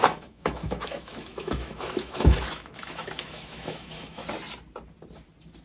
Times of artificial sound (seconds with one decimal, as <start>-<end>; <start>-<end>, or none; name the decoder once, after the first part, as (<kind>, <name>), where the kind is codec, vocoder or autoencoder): 0.0-4.2 (autoencoder, DAC-VAE)

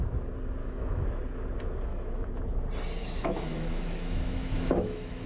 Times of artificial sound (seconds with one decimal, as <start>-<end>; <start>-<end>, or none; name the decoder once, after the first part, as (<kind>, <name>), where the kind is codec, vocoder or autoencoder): 0.6-1.2 (autoencoder, DAC-VAE); 1.9-2.4; 3.0-5.3

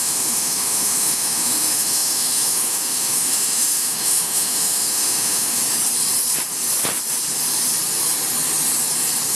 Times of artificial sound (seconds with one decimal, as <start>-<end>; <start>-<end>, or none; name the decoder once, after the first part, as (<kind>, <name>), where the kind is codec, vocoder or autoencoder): 0.0-5.6 (autoencoder, DAC-VAE)